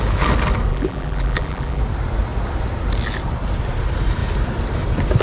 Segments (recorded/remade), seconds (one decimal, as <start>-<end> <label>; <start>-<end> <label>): 0.0-0.7 recorded; 0.7-1.8 remade; 1.8-5.2 recorded